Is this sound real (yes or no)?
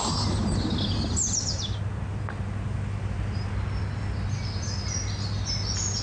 yes